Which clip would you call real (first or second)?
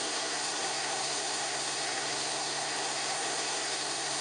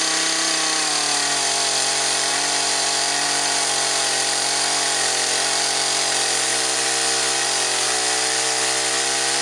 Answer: second